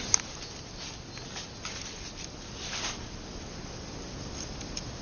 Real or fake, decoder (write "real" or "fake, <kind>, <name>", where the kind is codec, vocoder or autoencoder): real